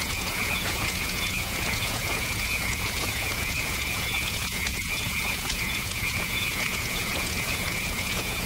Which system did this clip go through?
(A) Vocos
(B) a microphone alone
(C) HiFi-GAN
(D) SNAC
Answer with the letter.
A